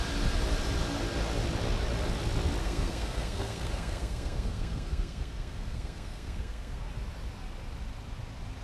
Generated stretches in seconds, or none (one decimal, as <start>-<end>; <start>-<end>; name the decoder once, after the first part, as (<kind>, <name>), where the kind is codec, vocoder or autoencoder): 2.6-6.9 (codec, SNAC)